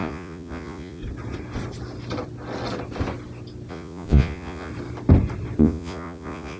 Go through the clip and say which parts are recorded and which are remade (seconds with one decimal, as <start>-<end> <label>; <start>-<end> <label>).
0.0-1.0 remade; 1.0-3.7 recorded; 3.7-4.7 remade; 4.7-5.6 recorded; 5.6-6.6 remade